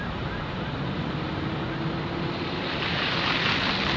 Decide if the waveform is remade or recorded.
recorded